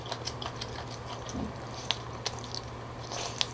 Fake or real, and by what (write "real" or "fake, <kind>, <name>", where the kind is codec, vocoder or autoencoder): real